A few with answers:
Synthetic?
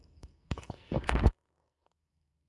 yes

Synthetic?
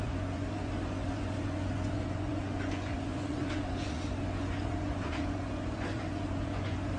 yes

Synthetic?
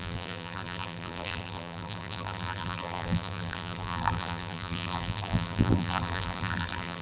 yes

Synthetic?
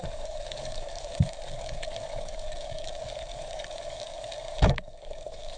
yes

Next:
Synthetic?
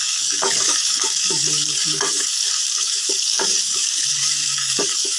yes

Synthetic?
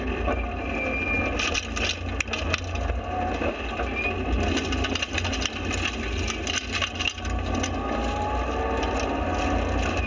no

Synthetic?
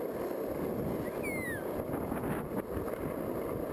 no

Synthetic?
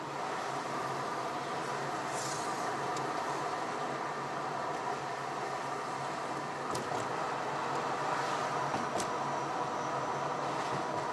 no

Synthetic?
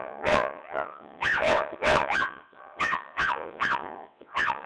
yes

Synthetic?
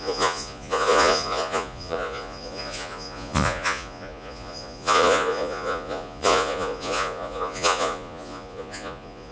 yes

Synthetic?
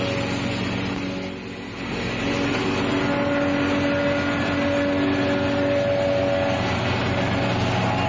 no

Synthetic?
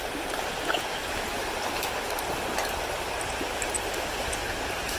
no